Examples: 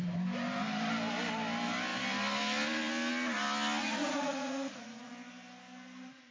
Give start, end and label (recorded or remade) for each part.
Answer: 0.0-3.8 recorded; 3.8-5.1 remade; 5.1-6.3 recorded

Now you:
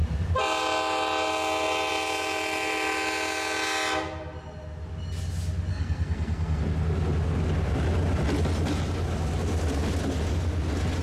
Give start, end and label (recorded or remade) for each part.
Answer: 0.0-5.7 recorded; 5.7-6.6 remade; 6.6-11.0 recorded